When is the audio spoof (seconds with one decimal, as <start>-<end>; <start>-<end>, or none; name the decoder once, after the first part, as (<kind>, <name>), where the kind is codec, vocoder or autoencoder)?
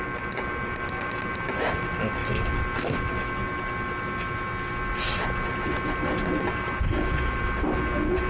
none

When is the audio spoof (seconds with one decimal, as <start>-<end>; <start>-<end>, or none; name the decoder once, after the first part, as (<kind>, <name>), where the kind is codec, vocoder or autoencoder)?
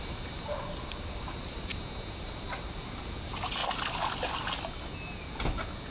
0.0-1.7 (vocoder, BigVGAN v2); 2.2-3.6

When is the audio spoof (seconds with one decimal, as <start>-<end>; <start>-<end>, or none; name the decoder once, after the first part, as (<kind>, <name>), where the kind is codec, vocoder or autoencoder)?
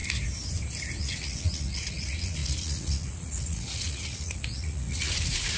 1.0-5.6 (vocoder, Vocos)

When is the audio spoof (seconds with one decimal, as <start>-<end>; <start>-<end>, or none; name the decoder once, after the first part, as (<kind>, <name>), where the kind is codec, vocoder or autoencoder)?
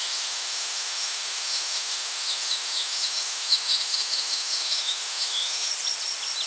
0.0-5.7 (autoencoder, DAC-VAE)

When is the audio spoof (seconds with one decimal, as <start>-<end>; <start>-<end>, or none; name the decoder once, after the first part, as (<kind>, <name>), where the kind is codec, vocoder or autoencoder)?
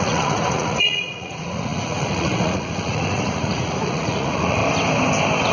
0.0-4.6 (vocoder, Vocos)